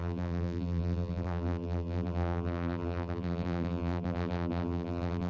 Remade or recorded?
remade